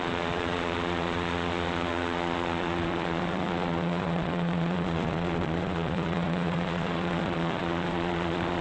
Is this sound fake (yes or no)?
yes